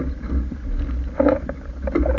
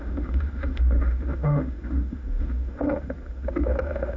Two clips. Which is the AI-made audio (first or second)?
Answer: second